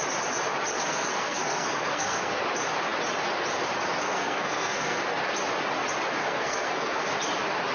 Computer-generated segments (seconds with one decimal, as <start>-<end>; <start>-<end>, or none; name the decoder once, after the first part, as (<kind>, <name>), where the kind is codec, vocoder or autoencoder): 0.7-2.4 (codec, SNAC); 4.0-5.0; 6.2-7.1

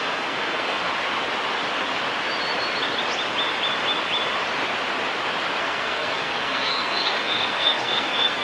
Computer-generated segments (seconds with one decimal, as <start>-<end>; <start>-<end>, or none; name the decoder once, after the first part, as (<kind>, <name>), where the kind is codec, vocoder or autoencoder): 0.0-0.9 (codec, SNAC); 5.6-8.4

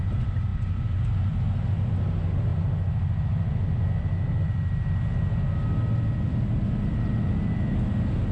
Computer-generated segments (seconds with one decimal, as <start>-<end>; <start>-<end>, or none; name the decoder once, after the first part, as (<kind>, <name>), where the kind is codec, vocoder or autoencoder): none

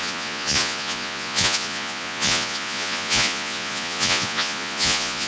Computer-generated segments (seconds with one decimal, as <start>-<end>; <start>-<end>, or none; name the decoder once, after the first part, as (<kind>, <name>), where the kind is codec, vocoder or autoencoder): 0.0-5.3 (vocoder, Vocos)

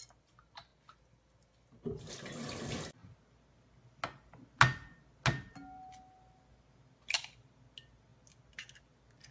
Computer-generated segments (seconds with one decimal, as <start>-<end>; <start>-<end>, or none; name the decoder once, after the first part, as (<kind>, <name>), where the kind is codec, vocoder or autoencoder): none

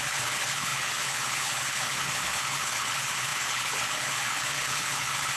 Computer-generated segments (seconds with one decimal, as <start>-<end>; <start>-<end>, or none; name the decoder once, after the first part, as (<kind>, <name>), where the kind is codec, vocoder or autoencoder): 0.0-5.4 (codec, HILCodec)